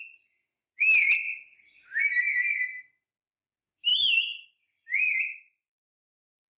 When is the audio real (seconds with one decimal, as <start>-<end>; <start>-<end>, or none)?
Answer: 0.0-6.6